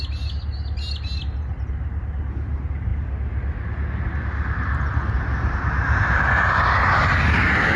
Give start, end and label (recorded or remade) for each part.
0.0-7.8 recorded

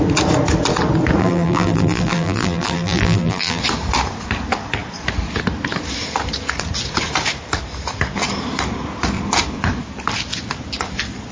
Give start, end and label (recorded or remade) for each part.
0.0-1.2 recorded; 1.2-3.6 remade; 3.6-11.3 recorded